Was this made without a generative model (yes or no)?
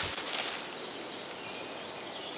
yes